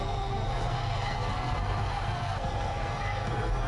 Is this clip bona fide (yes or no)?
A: no